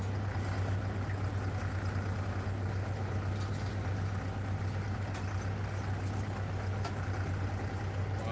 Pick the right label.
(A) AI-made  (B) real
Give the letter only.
B